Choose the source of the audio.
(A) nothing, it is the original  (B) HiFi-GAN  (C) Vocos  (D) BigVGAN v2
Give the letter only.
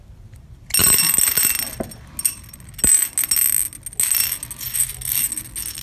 A